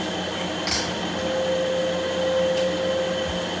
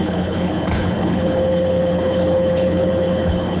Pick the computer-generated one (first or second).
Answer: second